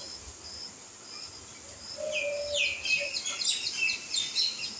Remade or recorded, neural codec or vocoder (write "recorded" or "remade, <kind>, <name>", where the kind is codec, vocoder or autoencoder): recorded